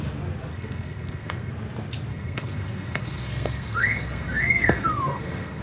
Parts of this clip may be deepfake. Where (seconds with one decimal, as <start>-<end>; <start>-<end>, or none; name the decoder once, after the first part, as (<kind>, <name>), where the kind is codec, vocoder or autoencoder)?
0.5-1.5 (codec, SNAC); 2.1-5.6